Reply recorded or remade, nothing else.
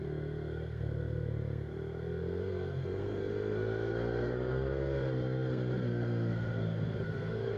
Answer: remade